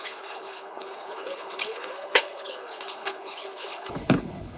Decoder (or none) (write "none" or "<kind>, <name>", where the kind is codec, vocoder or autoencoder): codec, HILCodec